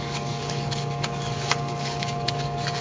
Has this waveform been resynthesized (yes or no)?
yes